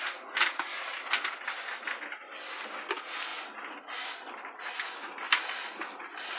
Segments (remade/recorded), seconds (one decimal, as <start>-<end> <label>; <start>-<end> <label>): 0.0-6.4 recorded